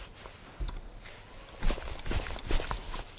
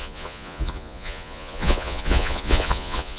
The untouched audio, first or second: first